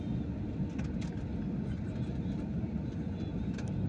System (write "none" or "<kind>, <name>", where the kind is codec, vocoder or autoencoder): none